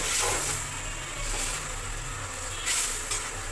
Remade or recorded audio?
recorded